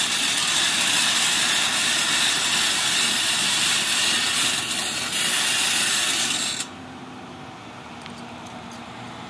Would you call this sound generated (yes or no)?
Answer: no